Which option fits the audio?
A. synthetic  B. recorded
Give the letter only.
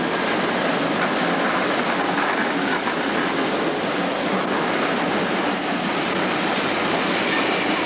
B